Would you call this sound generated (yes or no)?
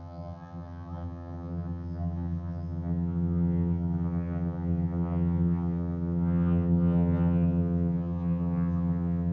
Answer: yes